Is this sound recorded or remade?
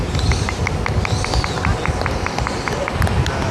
recorded